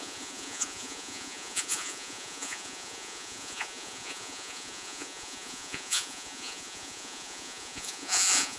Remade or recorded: remade